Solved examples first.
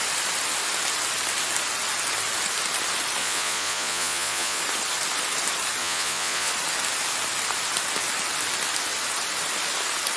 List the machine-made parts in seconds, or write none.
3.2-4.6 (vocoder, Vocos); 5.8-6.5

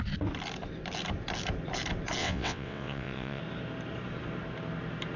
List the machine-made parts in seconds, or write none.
2.2-3.4 (vocoder, WaveNeXt)

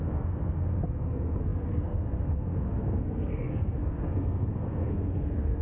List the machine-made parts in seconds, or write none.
0.0-5.6 (codec, SNAC)

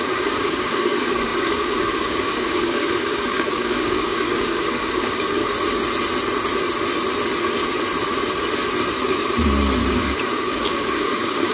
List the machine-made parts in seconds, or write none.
0.0-5.4 (codec, DAC); 9.9-11.5

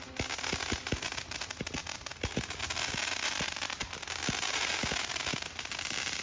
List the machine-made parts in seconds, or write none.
none

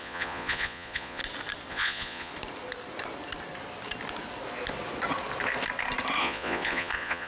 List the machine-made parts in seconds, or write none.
0.0-1.2 (vocoder, Vocos); 1.7-2.3; 6.2-7.3